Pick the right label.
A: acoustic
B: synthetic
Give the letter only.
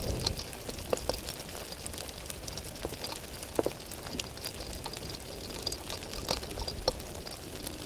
A